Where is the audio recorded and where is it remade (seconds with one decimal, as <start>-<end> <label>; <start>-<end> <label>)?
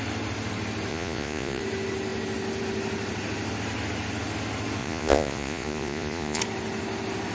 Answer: 0.0-0.9 recorded; 0.9-1.6 remade; 1.6-4.8 recorded; 4.8-6.4 remade; 6.4-7.3 recorded